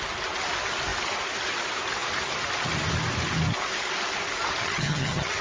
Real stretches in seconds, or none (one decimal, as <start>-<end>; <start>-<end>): 0.0-4.6